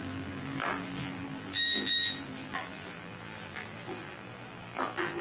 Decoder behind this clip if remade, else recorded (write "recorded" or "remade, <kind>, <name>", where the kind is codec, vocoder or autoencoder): remade, vocoder, BigVGAN v2